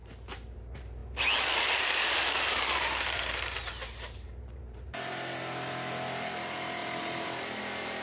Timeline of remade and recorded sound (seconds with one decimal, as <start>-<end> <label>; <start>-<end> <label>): 0.0-1.0 remade; 1.0-1.6 recorded; 1.6-8.0 remade